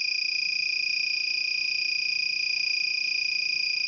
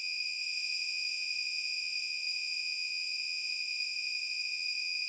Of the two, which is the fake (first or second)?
second